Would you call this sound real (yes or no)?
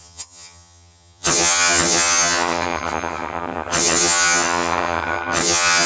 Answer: no